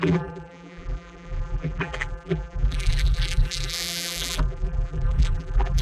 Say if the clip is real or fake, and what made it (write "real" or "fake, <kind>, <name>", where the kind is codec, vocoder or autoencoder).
fake, vocoder, BigVGAN v2